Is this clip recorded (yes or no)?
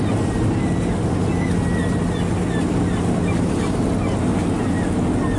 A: yes